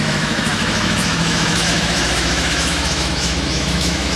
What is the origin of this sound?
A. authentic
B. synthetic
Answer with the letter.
B